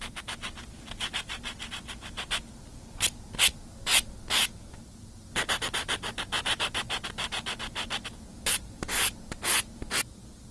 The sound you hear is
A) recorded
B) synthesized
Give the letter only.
A